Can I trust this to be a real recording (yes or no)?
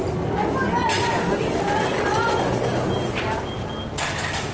yes